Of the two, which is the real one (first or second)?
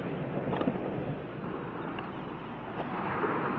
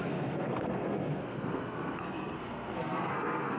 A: first